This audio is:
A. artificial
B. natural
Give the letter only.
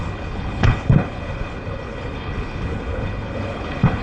A